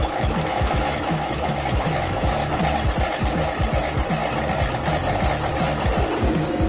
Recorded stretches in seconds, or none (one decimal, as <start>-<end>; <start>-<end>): 2.5-6.7